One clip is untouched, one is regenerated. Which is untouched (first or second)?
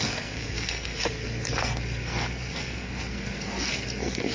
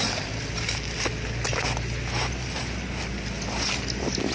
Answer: second